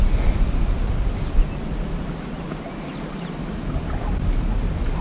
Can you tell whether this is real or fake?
real